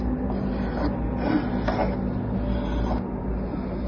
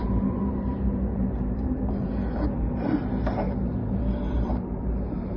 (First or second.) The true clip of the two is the first